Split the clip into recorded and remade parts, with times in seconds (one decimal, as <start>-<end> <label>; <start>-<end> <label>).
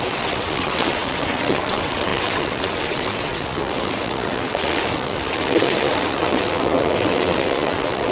0.0-8.1 remade